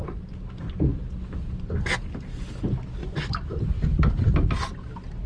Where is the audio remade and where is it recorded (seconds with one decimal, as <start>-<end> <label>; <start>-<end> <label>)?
0.0-1.2 recorded; 1.2-1.9 remade; 1.9-3.0 recorded; 3.0-4.3 remade; 4.3-5.3 recorded